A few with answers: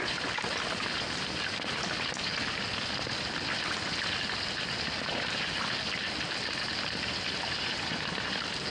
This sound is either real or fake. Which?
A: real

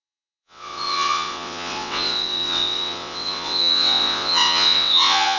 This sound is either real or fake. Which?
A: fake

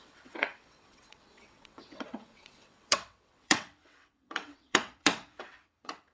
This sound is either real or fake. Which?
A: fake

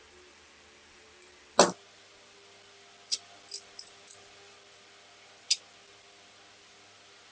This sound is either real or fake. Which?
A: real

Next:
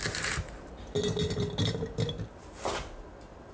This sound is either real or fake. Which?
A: real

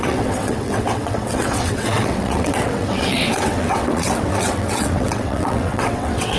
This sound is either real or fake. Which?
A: fake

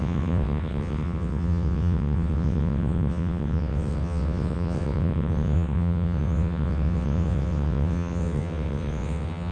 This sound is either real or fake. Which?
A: fake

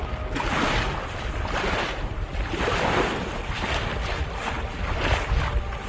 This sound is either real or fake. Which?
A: real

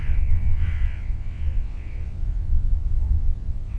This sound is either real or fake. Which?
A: fake